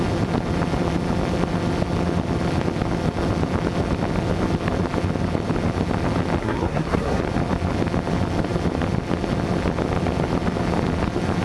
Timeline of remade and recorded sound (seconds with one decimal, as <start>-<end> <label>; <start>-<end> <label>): 0.0-6.4 recorded; 6.4-7.2 remade; 7.2-11.4 recorded